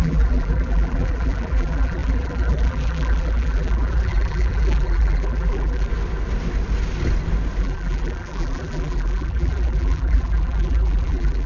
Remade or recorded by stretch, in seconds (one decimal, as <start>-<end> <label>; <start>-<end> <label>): 0.0-5.9 remade; 5.9-7.6 recorded; 7.6-11.5 remade